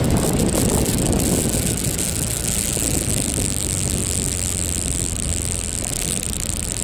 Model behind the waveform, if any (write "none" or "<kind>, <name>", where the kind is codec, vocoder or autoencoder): none